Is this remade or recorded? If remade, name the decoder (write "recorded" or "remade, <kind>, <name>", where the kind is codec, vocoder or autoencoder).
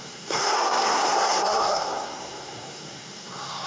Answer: remade, codec, SNAC